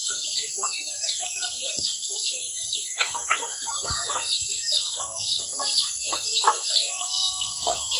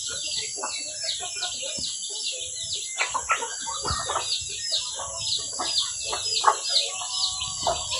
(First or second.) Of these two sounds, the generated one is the first